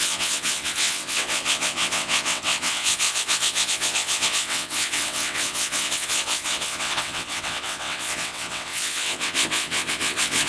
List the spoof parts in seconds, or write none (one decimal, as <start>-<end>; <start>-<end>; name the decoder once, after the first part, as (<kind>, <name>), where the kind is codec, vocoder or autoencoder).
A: 0.0-10.5 (vocoder, WaveNeXt)